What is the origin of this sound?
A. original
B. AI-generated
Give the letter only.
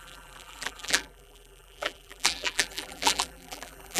B